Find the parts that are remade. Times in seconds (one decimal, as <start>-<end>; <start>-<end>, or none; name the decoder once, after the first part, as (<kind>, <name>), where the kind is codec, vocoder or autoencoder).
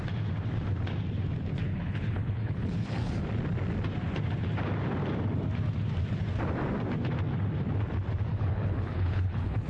1.7-3.1 (codec, HILCodec); 8.3-9.7